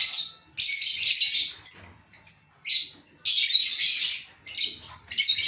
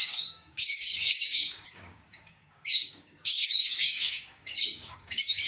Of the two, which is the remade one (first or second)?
second